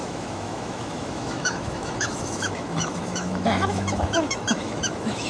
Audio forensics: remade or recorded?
remade